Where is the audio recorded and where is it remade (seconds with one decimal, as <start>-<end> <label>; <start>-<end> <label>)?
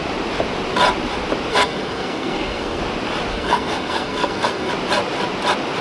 0.0-1.5 recorded; 1.5-2.8 remade; 2.8-3.3 recorded; 3.3-4.7 remade; 4.7-5.8 recorded